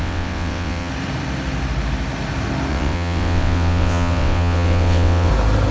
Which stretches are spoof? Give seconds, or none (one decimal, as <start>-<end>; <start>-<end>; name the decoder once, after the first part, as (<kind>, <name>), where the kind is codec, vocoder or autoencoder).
0.0-0.9 (vocoder, WaveNeXt); 2.7-5.3